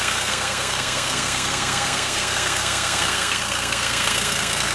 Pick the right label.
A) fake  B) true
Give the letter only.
A